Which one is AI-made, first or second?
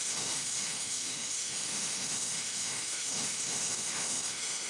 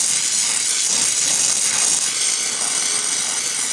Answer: first